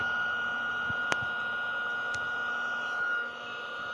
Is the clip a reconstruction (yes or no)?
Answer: no